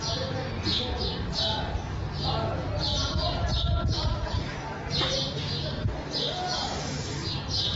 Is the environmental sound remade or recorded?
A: recorded